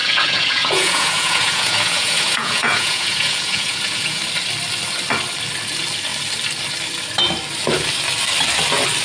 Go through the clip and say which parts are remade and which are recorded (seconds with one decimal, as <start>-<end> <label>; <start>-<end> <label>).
0.0-4.2 remade; 4.2-9.0 recorded